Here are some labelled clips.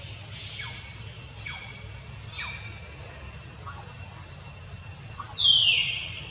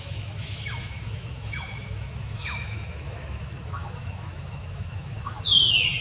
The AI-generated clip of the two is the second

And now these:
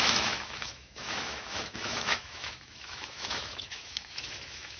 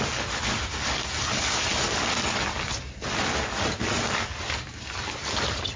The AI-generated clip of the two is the first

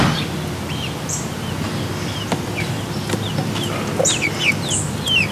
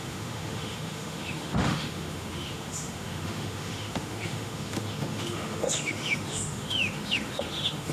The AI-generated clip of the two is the second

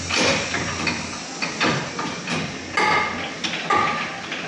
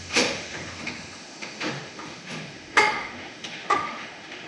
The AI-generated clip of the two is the second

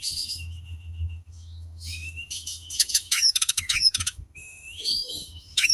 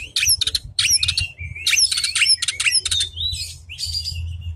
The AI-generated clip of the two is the first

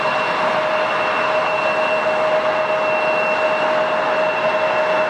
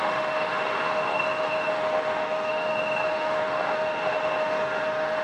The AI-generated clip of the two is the second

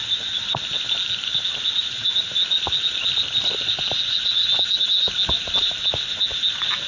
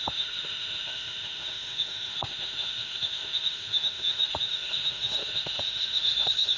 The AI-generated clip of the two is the second